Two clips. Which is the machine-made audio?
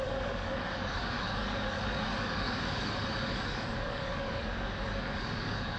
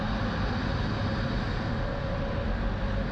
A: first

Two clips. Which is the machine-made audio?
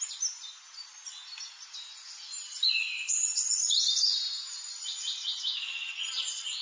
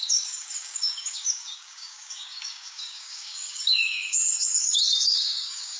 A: second